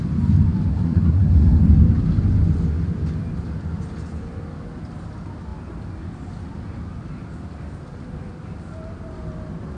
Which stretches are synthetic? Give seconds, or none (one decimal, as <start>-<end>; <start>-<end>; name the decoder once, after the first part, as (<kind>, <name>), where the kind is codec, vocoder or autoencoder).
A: 0.7-1.6 (codec, SNAC)